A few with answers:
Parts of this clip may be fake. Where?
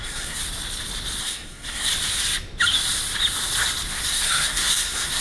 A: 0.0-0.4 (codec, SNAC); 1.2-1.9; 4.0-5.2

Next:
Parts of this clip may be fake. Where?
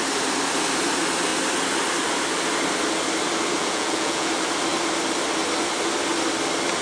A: 3.6-4.3 (vocoder, Vocos)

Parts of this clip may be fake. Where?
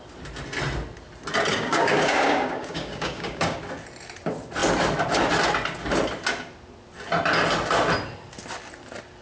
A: 1.5-3.6 (codec, DAC)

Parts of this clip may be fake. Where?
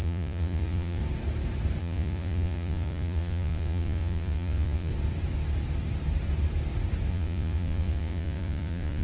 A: 0.0-1.0 (vocoder, Vocos); 1.8-4.9; 7.1-9.0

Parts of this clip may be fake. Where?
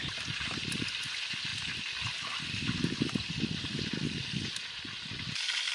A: 0.0-5.7 (vocoder, BigVGAN v2)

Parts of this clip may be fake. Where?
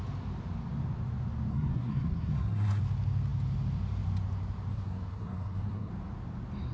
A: 1.5-2.8 (codec, SNAC); 4.7-5.9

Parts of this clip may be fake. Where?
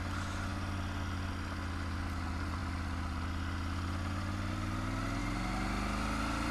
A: none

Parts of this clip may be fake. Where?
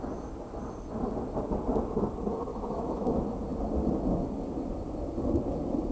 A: 2.5-3.1 (autoencoder, DAC-VAE)